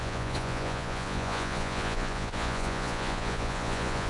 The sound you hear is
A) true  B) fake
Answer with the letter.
B